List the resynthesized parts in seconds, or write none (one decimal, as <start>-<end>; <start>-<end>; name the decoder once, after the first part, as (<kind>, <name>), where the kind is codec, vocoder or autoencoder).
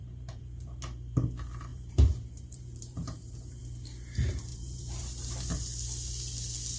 0.0-0.8 (vocoder, BigVGAN v2); 1.7-3.6; 4.5-5.4